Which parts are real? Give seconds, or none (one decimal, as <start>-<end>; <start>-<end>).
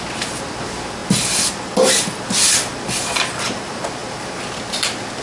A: 0.0-5.2